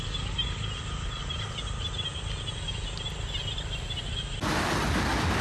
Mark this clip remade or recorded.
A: recorded